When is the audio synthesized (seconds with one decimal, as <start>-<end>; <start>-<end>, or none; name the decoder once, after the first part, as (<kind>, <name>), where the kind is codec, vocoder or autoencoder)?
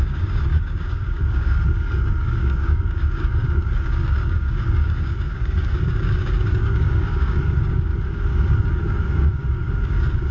0.0-7.9 (codec, DAC); 8.6-10.3